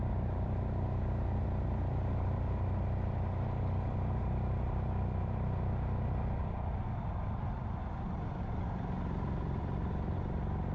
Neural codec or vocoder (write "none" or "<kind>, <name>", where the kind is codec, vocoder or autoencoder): none